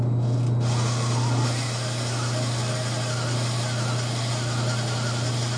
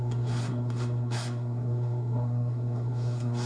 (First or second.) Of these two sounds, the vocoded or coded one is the second